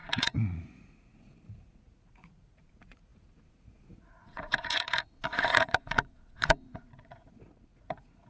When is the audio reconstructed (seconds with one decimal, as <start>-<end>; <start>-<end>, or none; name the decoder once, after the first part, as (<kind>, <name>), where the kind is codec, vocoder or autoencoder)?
0.0-8.3 (vocoder, Vocos)